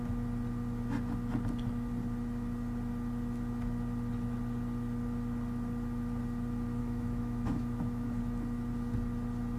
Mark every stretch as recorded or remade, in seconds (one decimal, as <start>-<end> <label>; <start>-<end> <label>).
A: 0.0-6.8 recorded; 6.8-8.2 remade; 8.2-9.6 recorded